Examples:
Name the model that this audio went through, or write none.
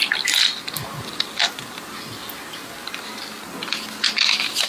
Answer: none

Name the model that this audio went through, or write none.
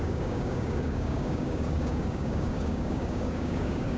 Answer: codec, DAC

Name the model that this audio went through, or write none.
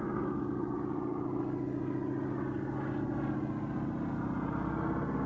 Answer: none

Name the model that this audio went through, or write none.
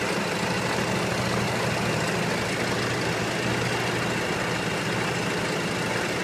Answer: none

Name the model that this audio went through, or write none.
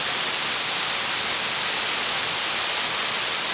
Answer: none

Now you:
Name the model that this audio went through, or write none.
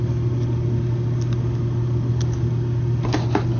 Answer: none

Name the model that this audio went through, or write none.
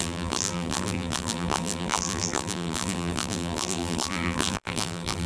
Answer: vocoder, BigVGAN v2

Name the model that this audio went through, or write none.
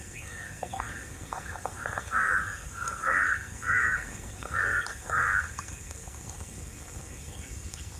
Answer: codec, SNAC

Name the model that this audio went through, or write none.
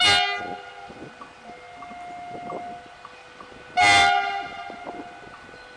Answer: none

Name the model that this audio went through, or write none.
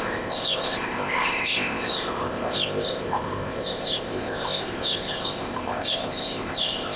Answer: codec, ZipCodec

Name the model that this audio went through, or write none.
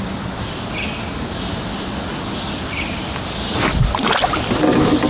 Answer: none